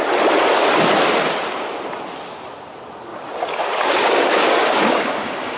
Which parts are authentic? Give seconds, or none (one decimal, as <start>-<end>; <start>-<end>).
0.0-3.1